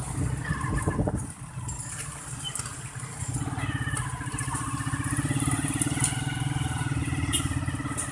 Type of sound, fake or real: real